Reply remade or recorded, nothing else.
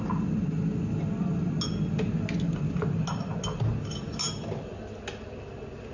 recorded